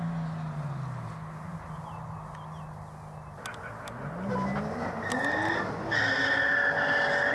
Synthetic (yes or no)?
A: no